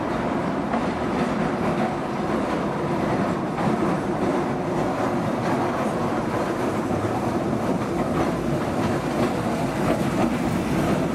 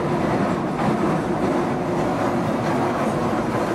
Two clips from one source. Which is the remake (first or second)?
first